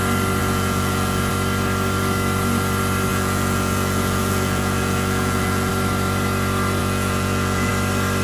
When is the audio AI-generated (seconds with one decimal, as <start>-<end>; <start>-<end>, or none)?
0.4-1.3; 3.1-5.7; 6.8-7.7